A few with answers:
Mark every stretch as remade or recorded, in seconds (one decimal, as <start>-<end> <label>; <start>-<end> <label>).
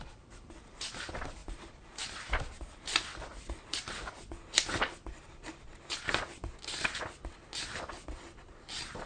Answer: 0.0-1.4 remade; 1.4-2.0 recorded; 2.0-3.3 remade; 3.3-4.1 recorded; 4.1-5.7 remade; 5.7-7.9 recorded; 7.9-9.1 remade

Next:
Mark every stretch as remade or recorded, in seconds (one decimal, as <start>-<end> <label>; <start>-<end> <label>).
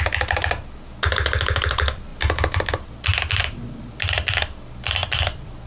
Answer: 0.0-3.1 recorded; 3.1-4.3 remade; 4.3-5.0 recorded; 5.0-5.7 remade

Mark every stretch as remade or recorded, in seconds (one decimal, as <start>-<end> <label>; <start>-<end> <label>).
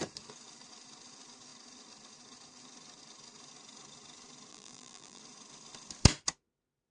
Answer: 0.0-4.5 recorded; 4.5-5.2 remade; 5.2-6.9 recorded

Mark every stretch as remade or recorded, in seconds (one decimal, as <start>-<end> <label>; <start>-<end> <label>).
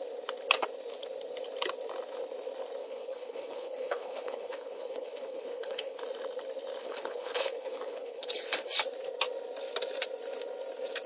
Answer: 0.0-2.8 recorded; 2.8-6.0 remade; 6.0-6.8 recorded; 6.8-8.8 remade; 8.8-11.1 recorded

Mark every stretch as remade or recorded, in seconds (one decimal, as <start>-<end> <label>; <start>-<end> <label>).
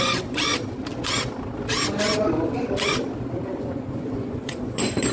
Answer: 0.0-0.5 remade; 0.5-3.6 recorded; 3.6-5.1 remade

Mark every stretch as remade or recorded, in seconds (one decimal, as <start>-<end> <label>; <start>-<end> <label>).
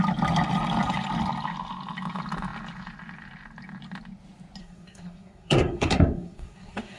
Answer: 0.0-4.6 recorded; 4.6-7.0 remade